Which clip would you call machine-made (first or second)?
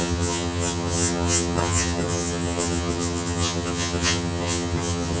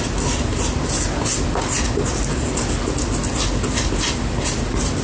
first